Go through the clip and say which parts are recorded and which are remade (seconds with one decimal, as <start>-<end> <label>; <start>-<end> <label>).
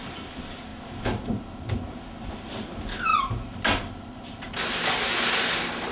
0.0-5.9 recorded